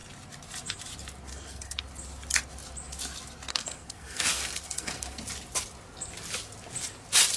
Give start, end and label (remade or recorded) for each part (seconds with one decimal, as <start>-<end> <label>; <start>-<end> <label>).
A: 0.0-1.3 recorded; 1.3-1.8 remade; 1.8-3.5 recorded; 3.5-5.2 remade; 5.2-7.4 recorded